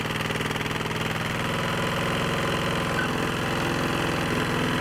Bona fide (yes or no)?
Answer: yes